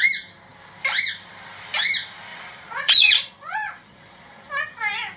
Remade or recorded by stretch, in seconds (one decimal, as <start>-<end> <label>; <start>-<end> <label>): 0.0-2.3 recorded; 2.3-4.5 remade; 4.5-5.2 recorded